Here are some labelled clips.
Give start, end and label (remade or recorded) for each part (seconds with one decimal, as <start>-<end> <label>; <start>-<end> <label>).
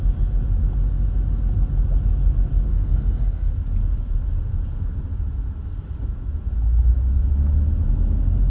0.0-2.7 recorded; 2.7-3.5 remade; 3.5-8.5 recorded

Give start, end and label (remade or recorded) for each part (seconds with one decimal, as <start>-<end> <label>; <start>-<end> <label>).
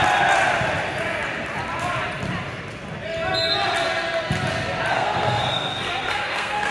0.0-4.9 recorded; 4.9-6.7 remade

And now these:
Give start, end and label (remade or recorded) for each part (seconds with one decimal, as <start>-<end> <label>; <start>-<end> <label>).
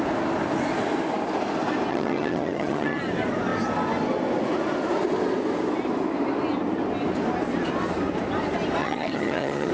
0.0-1.9 recorded; 1.9-3.0 remade; 3.0-8.8 recorded; 8.8-9.7 remade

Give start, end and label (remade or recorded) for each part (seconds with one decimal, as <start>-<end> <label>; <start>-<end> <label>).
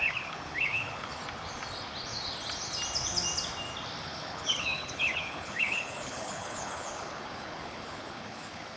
0.0-1.2 remade; 1.2-4.0 recorded; 4.0-8.8 remade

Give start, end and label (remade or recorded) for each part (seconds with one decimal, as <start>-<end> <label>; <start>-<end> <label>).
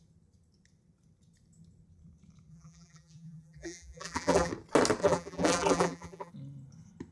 0.0-2.5 recorded; 2.5-4.5 remade; 4.5-5.0 recorded; 5.0-6.3 remade; 6.3-7.1 recorded